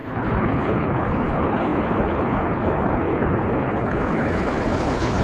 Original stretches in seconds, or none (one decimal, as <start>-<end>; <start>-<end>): none